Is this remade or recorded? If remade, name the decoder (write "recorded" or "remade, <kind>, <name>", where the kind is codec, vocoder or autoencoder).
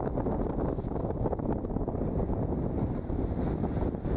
recorded